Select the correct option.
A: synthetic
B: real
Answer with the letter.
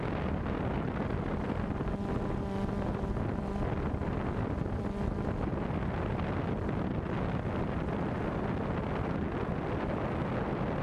B